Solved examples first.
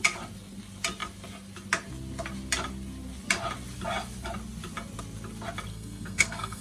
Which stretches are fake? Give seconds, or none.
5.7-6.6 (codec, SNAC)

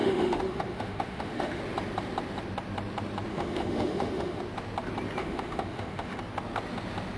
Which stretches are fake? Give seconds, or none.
0.0-1.6 (autoencoder, DAC-VAE); 3.3-4.4; 5.2-6.2

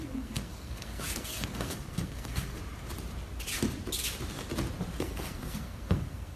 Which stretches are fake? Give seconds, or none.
0.0-2.6 (codec, SNAC); 5.0-6.4